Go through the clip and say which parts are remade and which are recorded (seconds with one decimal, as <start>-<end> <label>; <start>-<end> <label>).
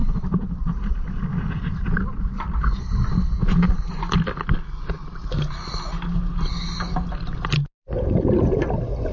0.0-9.1 recorded